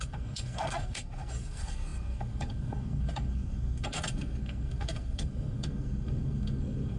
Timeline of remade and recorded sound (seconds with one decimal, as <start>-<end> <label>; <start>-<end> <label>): 0.0-7.0 remade